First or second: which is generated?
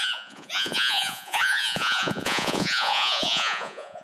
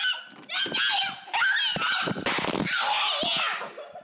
first